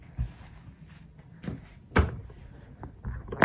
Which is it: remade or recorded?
recorded